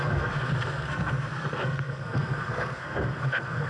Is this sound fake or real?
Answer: fake